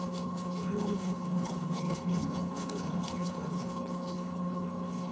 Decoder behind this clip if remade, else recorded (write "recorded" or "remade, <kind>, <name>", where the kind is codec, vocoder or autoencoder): remade, codec, HILCodec